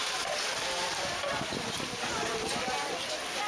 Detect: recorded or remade recorded